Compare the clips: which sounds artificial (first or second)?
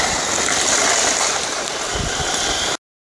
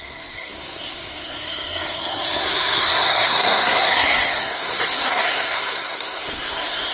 second